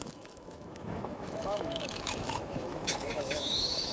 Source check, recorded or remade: remade